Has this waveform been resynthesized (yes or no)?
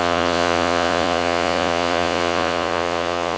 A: yes